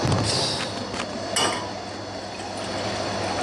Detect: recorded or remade recorded